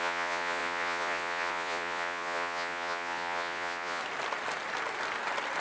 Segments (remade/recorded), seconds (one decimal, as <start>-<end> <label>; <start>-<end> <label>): 0.0-4.0 remade; 4.0-5.6 recorded